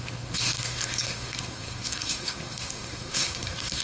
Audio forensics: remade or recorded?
remade